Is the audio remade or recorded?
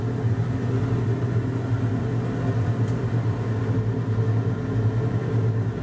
recorded